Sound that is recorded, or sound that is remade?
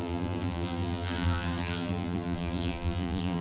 remade